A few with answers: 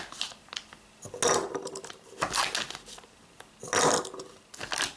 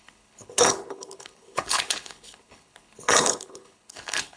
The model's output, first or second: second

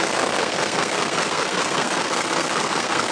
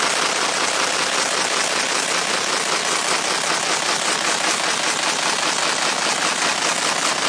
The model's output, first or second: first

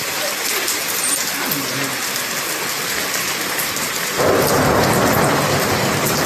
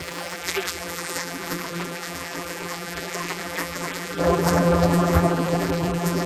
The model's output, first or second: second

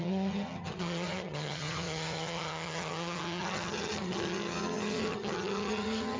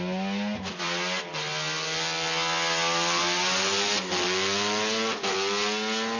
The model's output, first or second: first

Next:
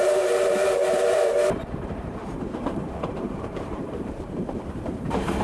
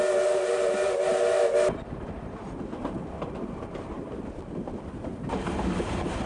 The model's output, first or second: first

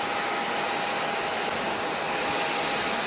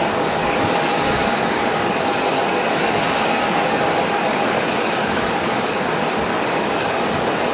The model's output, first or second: second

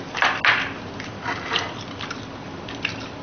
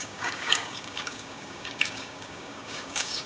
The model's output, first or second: second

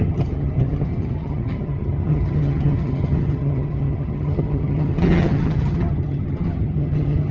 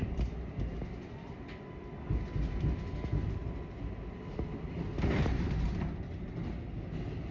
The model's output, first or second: first